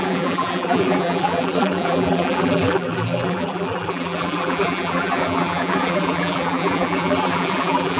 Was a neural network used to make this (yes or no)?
yes